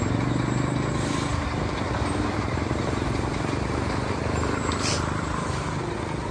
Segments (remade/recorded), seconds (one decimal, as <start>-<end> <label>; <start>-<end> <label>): 0.0-1.3 recorded; 1.3-4.2 remade; 4.2-6.3 recorded